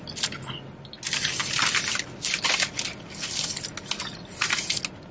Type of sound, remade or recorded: recorded